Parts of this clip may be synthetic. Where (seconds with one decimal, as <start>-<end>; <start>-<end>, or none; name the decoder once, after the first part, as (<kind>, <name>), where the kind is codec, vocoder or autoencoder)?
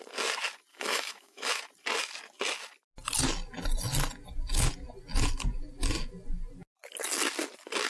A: 0.7-1.6 (autoencoder, DAC-VAE)